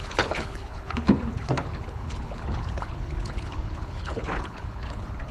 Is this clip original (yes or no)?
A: no